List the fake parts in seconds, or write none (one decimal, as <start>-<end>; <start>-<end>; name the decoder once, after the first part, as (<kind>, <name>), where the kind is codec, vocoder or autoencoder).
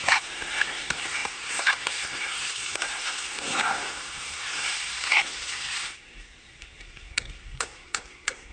0.0-8.5 (codec, SNAC)